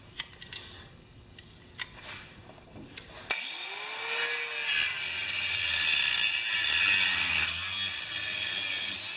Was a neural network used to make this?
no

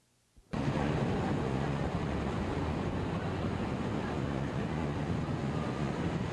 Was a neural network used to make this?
yes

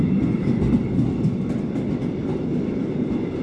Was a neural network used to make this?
no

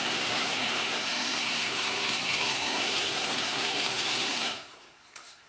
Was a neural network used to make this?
yes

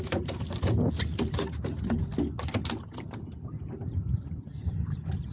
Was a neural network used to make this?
no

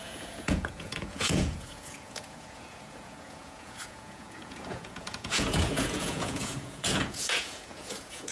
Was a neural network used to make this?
yes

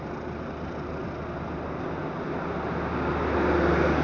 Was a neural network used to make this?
no